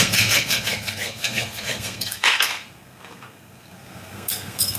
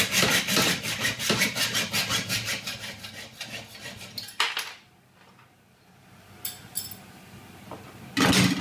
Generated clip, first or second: first